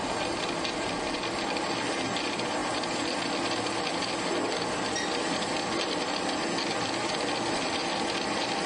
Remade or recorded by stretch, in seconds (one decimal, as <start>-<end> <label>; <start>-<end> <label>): 0.0-8.7 recorded

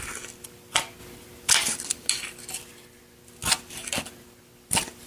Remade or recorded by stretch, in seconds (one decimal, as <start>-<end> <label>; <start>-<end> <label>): 0.0-5.1 recorded

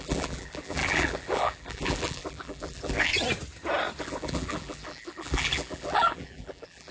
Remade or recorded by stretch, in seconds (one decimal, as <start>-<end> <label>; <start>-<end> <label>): 0.0-3.1 remade; 3.1-4.0 recorded; 4.0-6.9 remade

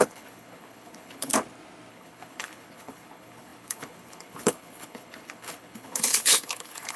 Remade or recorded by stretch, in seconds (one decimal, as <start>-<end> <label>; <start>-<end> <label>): 0.0-1.3 remade; 1.3-1.9 recorded; 1.9-7.0 remade

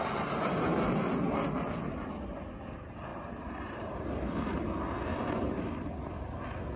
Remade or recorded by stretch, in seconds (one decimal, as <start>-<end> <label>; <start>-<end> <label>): 0.0-3.1 recorded; 3.1-4.6 remade; 4.6-5.1 recorded; 5.1-5.9 remade; 5.9-6.8 recorded